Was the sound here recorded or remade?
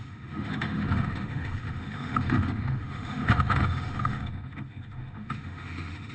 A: remade